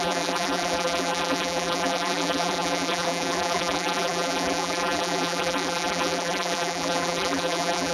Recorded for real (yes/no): no